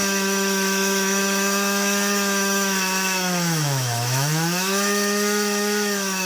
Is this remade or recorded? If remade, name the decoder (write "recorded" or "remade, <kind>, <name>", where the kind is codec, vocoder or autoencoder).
remade, autoencoder, DAC-VAE